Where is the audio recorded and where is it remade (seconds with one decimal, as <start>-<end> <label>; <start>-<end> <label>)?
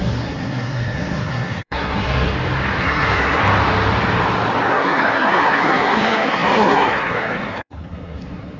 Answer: 0.0-2.3 remade; 2.3-2.8 recorded; 2.8-3.4 remade; 3.4-4.7 recorded; 4.7-8.6 remade